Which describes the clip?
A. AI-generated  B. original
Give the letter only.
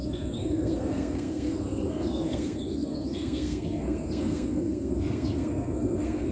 A